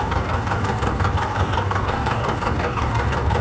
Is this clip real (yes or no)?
no